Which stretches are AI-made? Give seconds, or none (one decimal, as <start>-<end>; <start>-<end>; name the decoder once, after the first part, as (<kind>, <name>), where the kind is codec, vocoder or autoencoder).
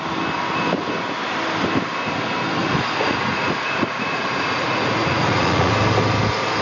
2.6-5.7 (vocoder, Vocos)